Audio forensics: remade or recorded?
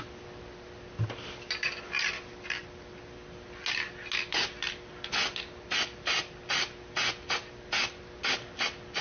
recorded